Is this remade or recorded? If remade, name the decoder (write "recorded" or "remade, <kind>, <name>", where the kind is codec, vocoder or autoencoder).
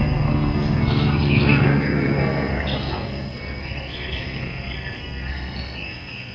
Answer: remade, codec, SNAC